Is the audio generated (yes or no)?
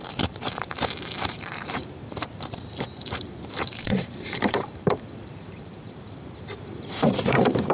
yes